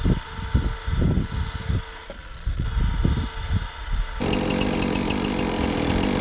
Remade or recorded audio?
recorded